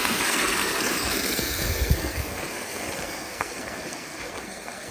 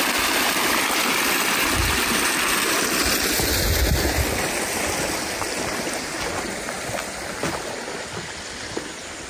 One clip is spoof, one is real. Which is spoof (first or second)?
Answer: first